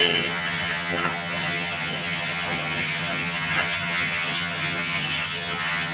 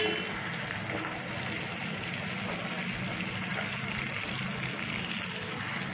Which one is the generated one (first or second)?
first